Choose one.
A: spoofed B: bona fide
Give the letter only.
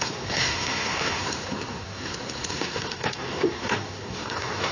A